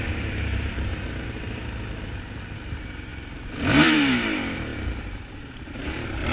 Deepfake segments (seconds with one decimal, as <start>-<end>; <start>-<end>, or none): 0.0-0.9; 2.0-3.1; 3.7-6.3